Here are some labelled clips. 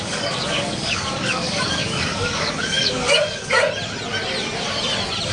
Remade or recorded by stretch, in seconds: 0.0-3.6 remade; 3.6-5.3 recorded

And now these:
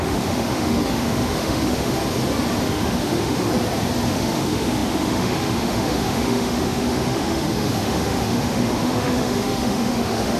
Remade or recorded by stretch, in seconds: 0.0-2.0 remade; 2.0-2.6 recorded; 2.6-3.5 remade; 3.5-4.1 recorded; 4.1-10.4 remade

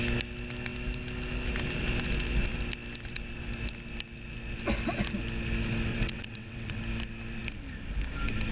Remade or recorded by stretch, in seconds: 0.0-5.9 recorded; 5.9-6.8 remade; 6.8-8.5 recorded